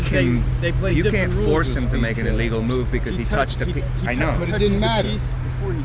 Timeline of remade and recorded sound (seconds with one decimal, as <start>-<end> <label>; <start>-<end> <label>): 0.0-5.8 recorded